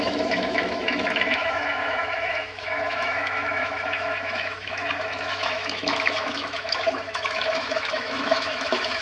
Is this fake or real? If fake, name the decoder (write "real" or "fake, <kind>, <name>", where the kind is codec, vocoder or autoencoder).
fake, autoencoder, DAC-VAE